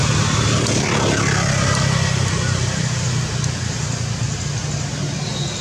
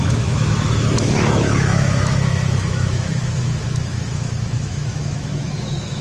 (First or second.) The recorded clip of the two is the first